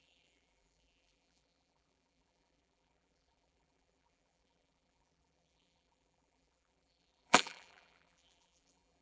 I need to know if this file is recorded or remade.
remade